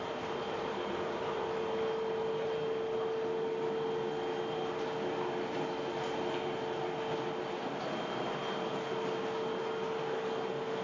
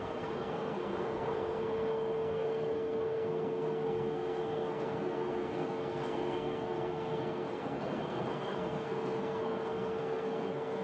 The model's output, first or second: second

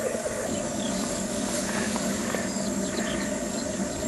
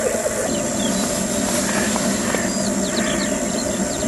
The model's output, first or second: first